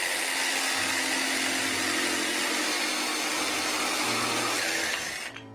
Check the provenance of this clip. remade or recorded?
recorded